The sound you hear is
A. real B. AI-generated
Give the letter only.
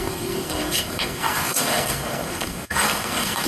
B